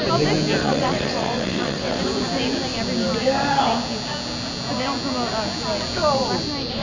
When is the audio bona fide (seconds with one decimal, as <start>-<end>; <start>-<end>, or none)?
0.0-0.6; 2.0-6.8